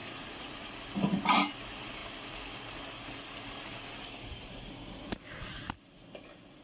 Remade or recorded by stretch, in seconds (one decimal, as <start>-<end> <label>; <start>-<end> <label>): 0.0-0.7 remade; 0.7-6.6 recorded